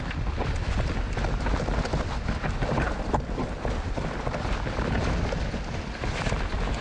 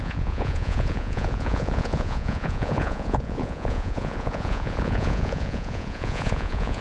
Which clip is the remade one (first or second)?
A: second